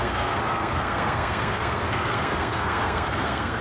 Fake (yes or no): yes